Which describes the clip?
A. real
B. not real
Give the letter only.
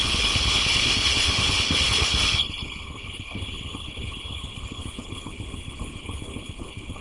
B